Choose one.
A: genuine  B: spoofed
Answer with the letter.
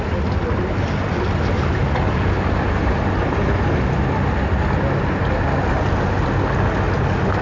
A